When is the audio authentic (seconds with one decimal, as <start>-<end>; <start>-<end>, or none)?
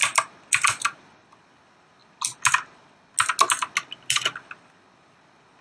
0.0-5.6